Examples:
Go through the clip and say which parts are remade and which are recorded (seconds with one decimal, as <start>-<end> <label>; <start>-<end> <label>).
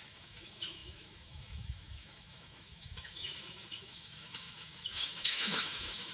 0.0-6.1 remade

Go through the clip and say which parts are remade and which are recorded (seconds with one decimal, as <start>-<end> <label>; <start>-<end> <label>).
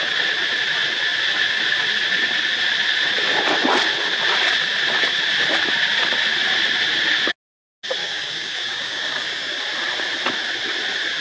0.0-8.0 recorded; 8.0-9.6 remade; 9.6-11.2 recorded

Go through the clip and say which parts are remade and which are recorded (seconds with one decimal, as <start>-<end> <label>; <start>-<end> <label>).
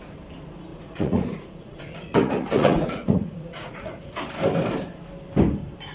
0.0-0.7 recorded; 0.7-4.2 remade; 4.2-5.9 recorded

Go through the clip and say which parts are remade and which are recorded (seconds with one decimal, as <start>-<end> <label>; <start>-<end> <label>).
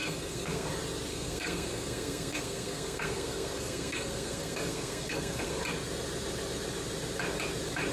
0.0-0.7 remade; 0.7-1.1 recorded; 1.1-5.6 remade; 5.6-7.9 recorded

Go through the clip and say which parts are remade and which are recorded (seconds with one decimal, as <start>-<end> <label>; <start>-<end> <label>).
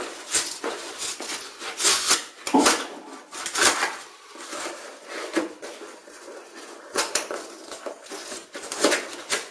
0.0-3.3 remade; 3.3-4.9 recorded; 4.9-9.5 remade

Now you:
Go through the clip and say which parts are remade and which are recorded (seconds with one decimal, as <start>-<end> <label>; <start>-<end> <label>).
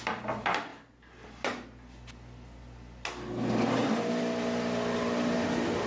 0.0-5.9 recorded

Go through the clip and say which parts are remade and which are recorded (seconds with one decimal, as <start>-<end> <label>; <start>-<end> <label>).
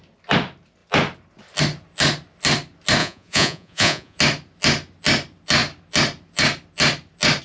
0.0-3.0 recorded; 3.0-4.2 remade; 4.2-7.4 recorded